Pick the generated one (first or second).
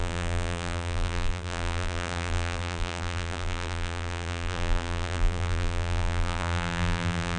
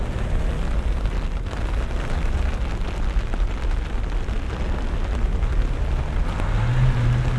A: first